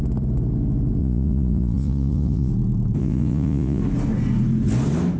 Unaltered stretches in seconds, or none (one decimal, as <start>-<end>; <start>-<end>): 0.0-1.0; 2.5-3.0; 3.8-5.2